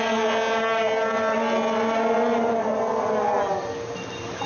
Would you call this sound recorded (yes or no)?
yes